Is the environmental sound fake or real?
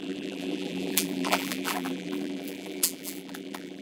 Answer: fake